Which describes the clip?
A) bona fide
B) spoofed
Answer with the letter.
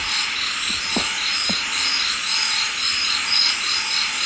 A